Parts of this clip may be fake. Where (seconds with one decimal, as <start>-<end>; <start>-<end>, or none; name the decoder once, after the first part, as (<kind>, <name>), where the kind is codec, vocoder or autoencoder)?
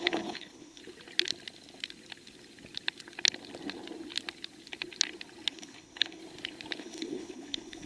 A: 0.0-0.8 (codec, HILCodec); 5.5-6.2; 6.8-7.9